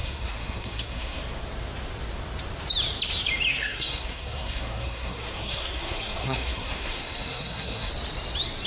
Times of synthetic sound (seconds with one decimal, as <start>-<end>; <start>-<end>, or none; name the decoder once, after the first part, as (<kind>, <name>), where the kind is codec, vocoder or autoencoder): 0.0-1.2 (codec, SNAC); 3.5-7.9